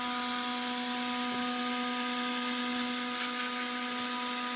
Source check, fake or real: real